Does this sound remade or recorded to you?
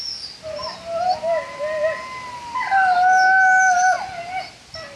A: recorded